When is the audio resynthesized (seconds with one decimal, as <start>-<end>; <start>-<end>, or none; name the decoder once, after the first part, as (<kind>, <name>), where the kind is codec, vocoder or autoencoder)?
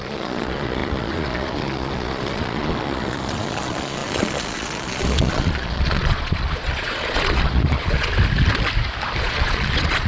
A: 0.0-8.1 (vocoder, Vocos); 9.2-10.1